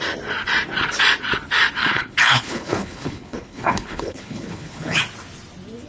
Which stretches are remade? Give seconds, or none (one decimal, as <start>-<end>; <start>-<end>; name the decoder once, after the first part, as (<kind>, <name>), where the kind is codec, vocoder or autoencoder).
1.8-5.0 (codec, HILCodec)